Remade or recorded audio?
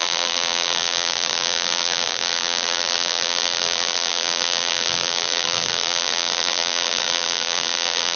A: remade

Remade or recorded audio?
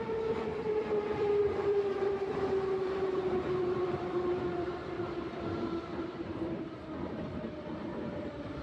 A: remade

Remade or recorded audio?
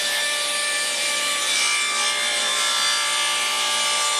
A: remade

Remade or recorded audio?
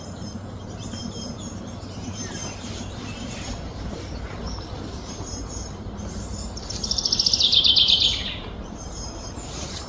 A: remade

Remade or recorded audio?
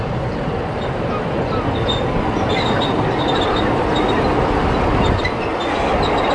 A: recorded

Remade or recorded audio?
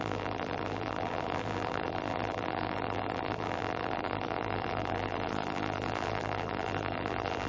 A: remade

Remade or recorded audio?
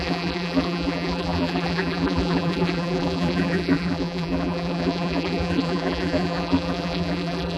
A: remade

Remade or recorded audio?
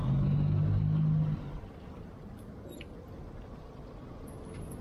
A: recorded